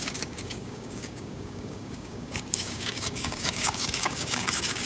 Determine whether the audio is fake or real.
fake